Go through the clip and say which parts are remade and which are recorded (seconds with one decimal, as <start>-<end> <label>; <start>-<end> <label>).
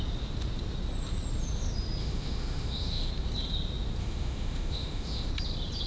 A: 0.0-2.0 recorded; 2.0-3.1 remade; 3.1-4.0 recorded; 4.0-5.3 remade; 5.3-5.9 recorded